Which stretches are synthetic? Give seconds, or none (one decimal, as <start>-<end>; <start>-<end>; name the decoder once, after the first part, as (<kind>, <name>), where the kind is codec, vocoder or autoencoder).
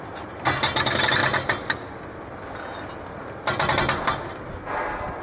none